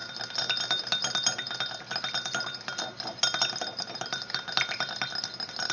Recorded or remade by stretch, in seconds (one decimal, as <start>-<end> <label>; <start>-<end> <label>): 0.0-5.7 recorded